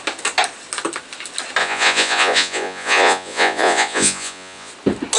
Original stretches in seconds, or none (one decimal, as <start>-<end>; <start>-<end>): 0.0-1.6; 4.7-5.2